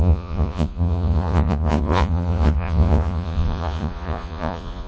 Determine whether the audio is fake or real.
fake